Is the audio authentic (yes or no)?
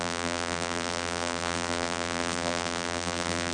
no